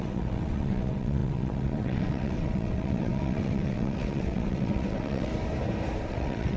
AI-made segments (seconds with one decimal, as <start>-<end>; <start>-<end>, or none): 0.0-5.3; 6.1-6.6